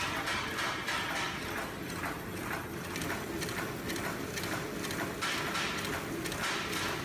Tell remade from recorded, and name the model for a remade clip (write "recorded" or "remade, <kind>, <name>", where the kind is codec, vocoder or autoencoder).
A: recorded